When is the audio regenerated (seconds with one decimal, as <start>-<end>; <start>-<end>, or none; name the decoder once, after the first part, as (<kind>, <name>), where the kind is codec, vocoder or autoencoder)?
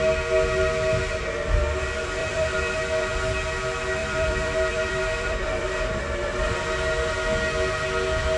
2.2-3.1 (vocoder, BigVGAN v2); 4.0-6.5